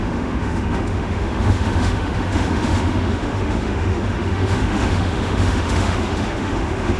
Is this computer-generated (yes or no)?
yes